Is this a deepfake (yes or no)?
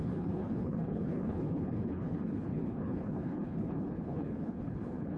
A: yes